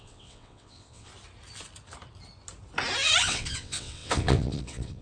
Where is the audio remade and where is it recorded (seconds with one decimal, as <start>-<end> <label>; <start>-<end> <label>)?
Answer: 0.0-1.1 remade; 1.1-3.2 recorded; 3.2-5.0 remade